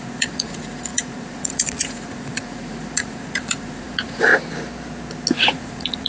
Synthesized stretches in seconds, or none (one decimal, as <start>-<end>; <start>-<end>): 0.0-4.3; 5.4-6.1

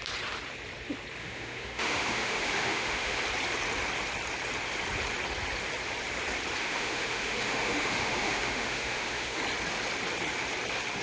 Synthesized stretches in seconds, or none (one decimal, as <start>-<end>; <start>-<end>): 1.2-3.2; 6.6-9.4

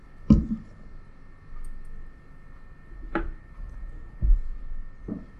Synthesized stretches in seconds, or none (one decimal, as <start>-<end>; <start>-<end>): 3.2-4.4; 5.0-5.4

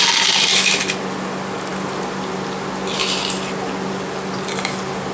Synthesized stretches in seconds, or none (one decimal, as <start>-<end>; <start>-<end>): none

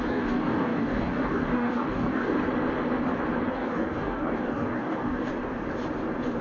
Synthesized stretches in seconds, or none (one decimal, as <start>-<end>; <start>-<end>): 0.0-2.4; 3.5-5.3

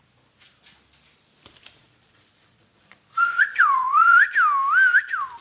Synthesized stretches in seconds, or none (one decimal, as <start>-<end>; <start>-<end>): 1.8-4.2

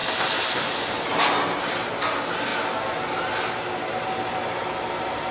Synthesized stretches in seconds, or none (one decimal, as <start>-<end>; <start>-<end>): none